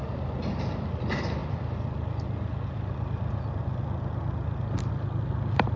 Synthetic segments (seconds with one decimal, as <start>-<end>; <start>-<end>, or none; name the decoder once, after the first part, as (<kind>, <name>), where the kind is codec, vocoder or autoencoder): none